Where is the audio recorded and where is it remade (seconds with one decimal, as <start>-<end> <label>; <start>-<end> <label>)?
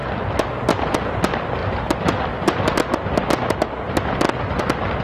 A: 0.0-5.0 recorded